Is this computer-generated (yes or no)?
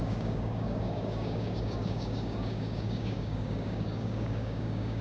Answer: yes